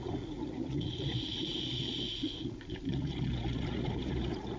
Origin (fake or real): fake